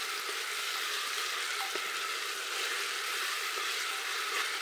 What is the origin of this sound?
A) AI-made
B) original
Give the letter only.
B